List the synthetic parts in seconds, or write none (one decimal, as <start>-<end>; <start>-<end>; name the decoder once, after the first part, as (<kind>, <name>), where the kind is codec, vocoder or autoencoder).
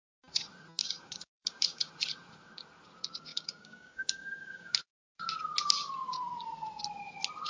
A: 0.8-1.9 (codec, DAC); 3.3-4.8